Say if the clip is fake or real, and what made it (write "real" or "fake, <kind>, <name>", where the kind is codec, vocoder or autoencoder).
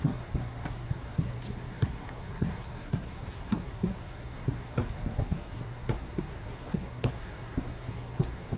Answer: fake, codec, SNAC